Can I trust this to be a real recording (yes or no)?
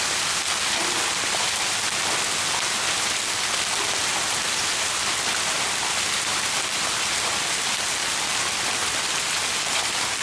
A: yes